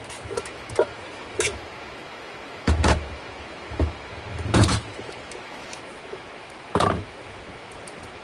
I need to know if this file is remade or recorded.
remade